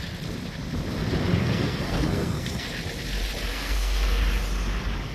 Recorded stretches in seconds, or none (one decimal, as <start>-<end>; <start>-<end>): 0.0-1.4; 2.7-3.5; 4.2-5.1